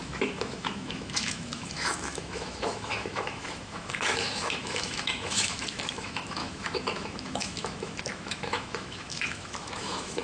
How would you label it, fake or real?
fake